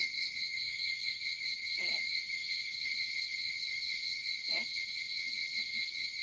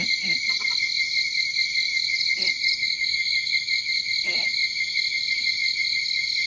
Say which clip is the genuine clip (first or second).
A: second